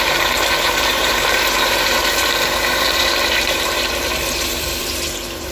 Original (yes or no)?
no